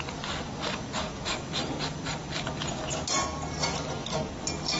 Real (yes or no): yes